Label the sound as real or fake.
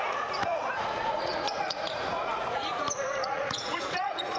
fake